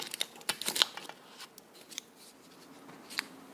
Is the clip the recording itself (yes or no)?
yes